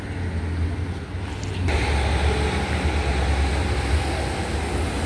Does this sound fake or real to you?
real